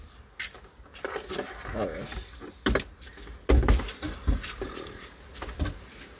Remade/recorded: recorded